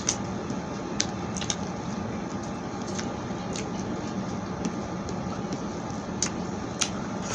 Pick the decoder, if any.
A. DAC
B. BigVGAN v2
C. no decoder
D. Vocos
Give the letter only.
C